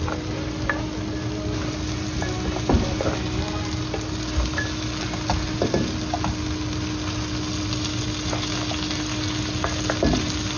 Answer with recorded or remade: recorded